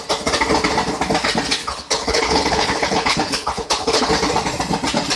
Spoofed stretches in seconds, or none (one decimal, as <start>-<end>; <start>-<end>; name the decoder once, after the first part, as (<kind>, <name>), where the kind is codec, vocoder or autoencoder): 1.6-4.1 (codec, HILCodec)

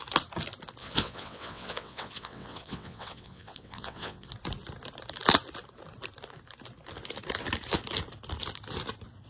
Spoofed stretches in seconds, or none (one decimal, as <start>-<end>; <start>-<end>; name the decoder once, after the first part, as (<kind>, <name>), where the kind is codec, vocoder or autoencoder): 0.8-4.3 (vocoder, WaveNeXt)